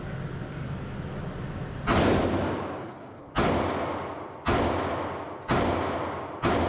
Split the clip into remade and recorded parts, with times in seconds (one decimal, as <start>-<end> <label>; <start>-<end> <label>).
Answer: 0.0-2.8 recorded; 2.8-3.3 remade; 3.3-6.7 recorded